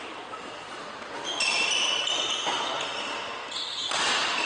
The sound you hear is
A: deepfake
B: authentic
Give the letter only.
A